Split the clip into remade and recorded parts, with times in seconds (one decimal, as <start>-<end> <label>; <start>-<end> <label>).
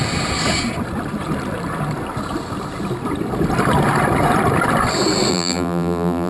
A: 0.0-5.3 recorded; 5.3-6.3 remade